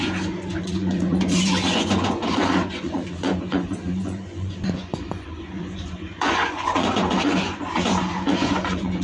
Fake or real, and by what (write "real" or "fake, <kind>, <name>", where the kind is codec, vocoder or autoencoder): fake, vocoder, Vocos